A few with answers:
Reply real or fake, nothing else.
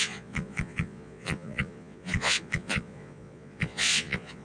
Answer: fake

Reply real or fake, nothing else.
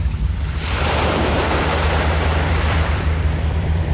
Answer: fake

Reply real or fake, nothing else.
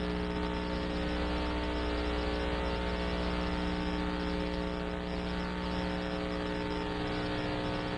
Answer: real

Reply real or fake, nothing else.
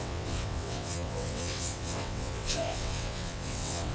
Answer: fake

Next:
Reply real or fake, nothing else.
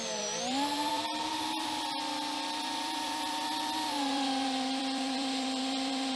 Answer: fake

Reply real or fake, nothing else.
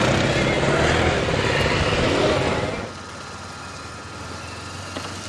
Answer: real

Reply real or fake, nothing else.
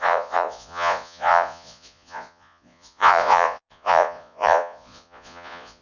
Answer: fake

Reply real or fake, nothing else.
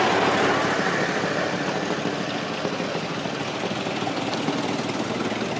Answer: real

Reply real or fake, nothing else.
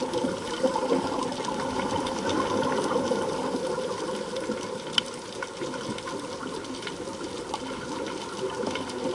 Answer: real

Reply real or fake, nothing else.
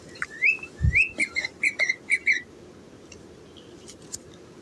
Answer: real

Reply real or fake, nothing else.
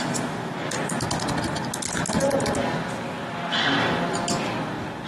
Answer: real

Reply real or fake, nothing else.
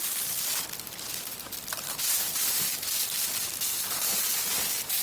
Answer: real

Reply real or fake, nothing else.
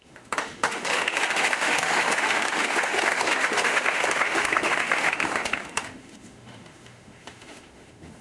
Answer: fake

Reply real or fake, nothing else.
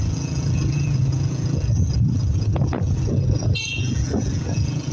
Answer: fake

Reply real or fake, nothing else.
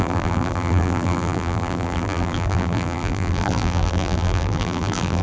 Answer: fake